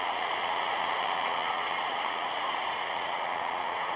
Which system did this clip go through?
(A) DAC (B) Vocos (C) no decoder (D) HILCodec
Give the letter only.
B